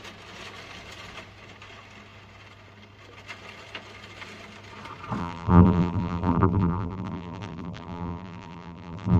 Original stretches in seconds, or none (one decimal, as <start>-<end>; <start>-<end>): 0.0-5.2